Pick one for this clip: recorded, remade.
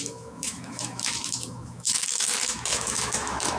remade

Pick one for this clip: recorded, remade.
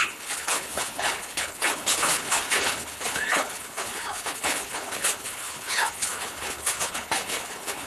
remade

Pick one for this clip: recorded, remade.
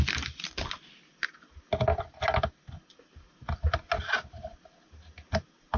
recorded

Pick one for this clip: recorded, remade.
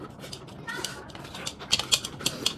recorded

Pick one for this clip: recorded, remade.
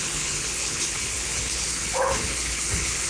remade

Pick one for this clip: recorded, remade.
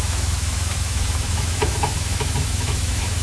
remade